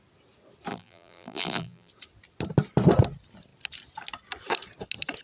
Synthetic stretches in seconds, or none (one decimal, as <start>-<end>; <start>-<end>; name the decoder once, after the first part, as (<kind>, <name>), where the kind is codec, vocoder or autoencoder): 0.7-1.9 (vocoder, BigVGAN v2)